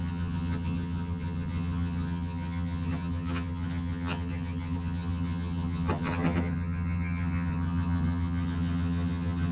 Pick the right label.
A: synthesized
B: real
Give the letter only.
A